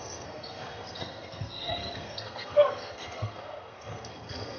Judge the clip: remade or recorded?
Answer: remade